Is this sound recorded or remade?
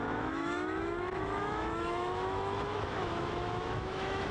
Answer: remade